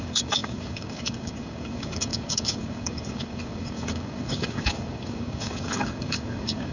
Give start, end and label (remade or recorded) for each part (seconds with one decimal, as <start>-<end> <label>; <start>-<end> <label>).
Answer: 0.0-6.7 remade